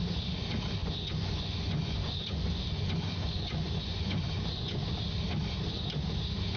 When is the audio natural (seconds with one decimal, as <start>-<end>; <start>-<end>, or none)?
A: 0.0-0.8; 4.8-6.6